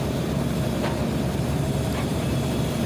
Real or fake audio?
fake